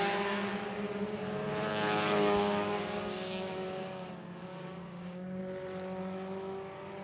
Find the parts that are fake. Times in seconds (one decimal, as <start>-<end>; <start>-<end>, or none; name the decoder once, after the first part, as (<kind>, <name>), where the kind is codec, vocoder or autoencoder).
1.7-4.1 (codec, DAC); 4.5-5.4